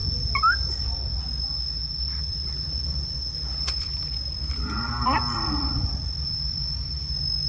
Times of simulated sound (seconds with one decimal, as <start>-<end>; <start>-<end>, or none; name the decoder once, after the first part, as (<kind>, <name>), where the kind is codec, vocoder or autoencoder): 1.4-1.8 (vocoder, BigVGAN v2); 2.3-7.5

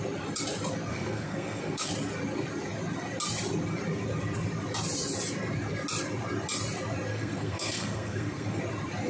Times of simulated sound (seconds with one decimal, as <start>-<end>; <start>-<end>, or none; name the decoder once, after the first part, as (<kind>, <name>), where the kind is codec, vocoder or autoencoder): 0.9-1.9 (codec, SNAC); 7.1-8.6

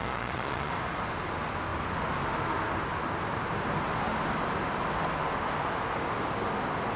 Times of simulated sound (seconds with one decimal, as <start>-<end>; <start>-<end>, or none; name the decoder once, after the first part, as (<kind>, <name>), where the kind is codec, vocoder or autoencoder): 0.0-0.7 (vocoder, Vocos)

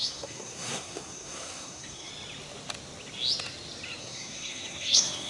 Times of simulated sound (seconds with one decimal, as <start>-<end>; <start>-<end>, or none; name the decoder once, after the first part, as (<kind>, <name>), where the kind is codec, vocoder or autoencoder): 0.0-2.1 (codec, SNAC); 4.0-5.3

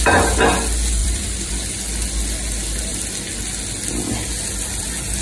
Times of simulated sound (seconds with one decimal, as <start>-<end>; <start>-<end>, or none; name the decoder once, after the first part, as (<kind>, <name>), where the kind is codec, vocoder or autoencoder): 1.0-1.5 (vocoder, BigVGAN v2)

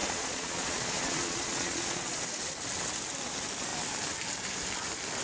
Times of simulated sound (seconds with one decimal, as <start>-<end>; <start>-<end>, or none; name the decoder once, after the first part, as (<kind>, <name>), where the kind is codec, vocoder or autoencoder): 0.0-2.2 (vocoder, Vocos)